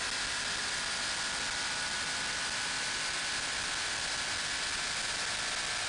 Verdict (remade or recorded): recorded